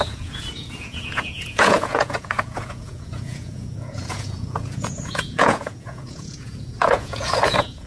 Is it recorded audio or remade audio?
remade